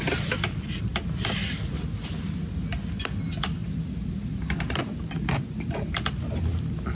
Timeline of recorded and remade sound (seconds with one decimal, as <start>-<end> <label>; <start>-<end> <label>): 0.0-6.9 recorded

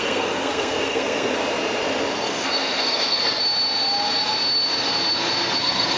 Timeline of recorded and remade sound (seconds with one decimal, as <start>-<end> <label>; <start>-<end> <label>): 0.0-1.4 remade; 1.4-2.1 recorded; 2.1-3.4 remade; 3.4-5.6 recorded; 5.6-6.0 remade

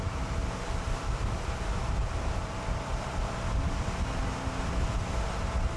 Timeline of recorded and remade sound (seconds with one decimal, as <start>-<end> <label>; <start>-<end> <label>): 0.0-0.4 recorded; 0.4-3.9 remade; 3.9-5.8 recorded